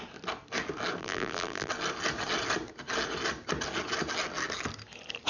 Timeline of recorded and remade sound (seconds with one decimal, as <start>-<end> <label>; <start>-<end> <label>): 0.0-1.0 recorded; 1.0-1.7 remade; 1.7-5.3 recorded